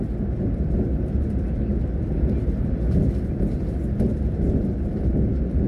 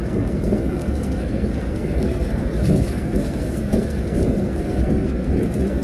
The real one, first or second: first